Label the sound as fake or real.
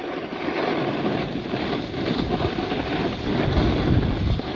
real